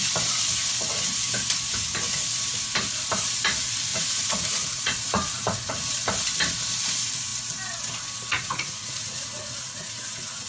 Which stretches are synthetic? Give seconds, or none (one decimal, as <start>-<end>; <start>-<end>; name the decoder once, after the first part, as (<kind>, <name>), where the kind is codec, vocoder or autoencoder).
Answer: 3.9-5.7 (vocoder, Vocos); 8.3-10.5